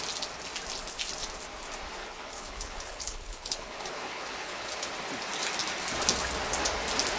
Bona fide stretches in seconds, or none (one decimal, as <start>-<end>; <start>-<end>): 0.0-2.0; 4.9-7.2